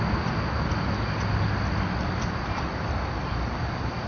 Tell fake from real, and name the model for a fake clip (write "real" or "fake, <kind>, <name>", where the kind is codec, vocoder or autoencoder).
real